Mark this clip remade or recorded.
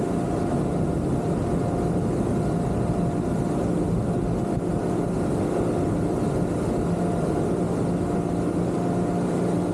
recorded